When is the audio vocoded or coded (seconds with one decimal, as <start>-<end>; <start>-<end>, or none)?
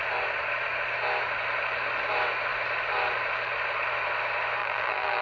4.6-5.2